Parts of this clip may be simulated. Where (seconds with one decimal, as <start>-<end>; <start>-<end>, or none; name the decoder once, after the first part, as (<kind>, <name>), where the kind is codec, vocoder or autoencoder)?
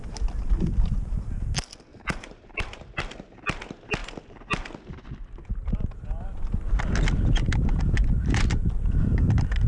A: 1.9-3.0 (vocoder, BigVGAN v2)